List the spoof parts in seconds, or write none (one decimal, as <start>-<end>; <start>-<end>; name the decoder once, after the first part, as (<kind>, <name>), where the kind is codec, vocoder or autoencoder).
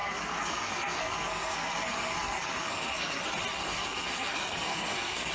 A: 0.0-3.2 (codec, SNAC); 3.6-5.3